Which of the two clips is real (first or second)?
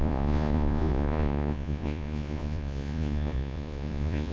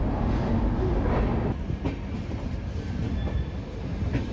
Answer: second